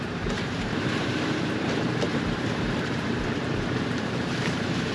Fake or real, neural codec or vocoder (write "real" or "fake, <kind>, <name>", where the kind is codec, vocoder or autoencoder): fake, vocoder, BigVGAN v2